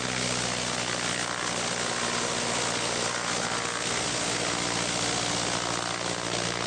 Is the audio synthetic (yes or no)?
no